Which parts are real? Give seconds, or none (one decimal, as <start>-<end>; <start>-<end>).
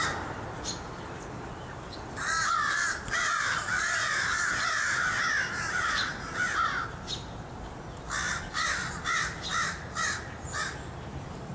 0.0-11.5